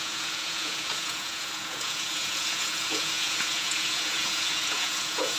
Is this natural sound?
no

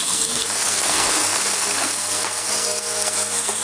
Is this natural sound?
no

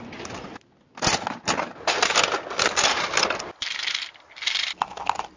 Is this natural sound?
yes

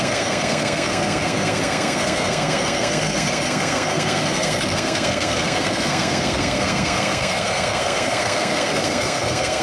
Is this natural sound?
no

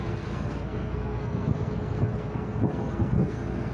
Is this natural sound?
no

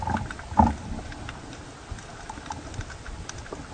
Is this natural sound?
yes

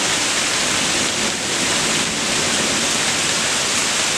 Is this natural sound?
yes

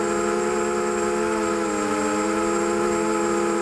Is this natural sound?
yes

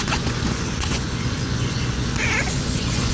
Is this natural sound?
no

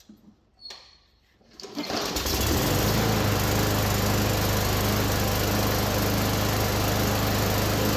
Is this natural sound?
yes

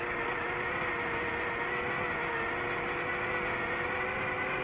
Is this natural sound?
yes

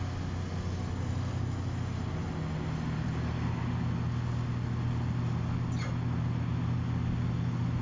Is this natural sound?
yes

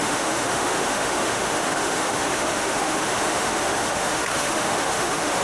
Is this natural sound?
no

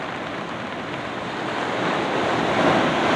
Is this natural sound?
yes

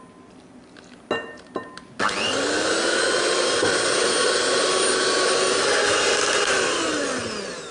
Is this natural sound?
yes